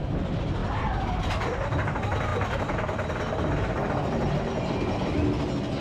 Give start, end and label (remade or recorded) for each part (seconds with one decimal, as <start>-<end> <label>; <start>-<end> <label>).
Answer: 0.0-5.8 recorded